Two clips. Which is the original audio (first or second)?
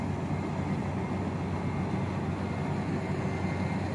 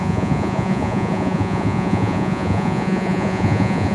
first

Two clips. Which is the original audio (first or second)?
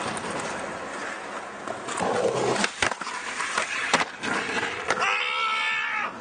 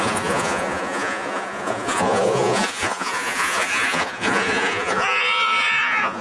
first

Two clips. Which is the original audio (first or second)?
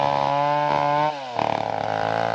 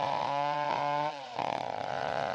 first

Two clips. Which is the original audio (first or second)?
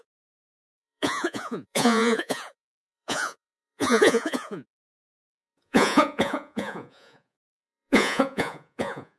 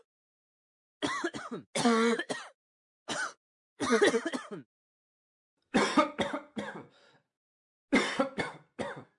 second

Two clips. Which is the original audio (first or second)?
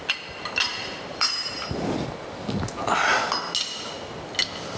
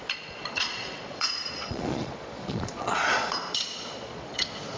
first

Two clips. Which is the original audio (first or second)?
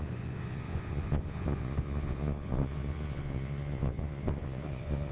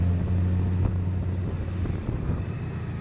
second